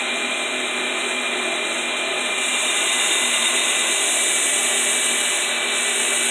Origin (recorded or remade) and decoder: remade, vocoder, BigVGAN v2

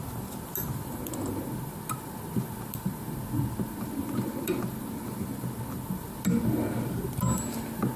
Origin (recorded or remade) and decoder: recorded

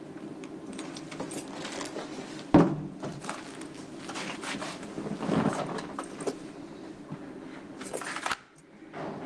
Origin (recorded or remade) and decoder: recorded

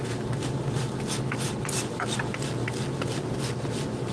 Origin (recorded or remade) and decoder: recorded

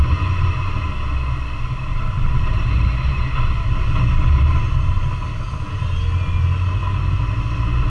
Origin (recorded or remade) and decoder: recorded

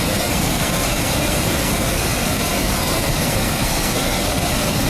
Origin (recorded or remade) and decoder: remade, codec, SNAC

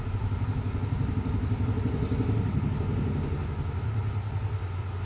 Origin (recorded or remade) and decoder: recorded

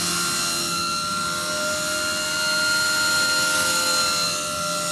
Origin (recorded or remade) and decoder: recorded